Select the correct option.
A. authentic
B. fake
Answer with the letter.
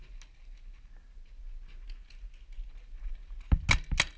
A